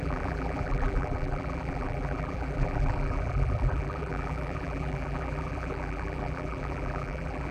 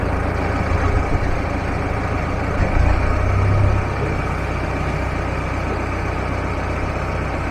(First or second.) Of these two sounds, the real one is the second